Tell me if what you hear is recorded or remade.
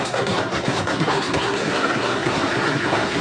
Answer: remade